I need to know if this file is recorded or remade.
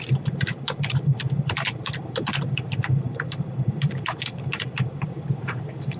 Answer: remade